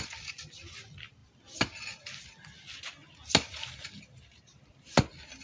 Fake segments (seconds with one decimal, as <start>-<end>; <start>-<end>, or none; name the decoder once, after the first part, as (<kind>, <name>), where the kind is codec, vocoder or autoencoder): none